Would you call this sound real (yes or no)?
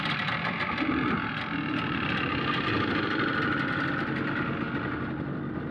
yes